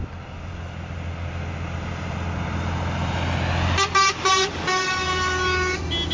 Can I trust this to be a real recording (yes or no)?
yes